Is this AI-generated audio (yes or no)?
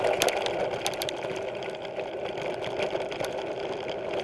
no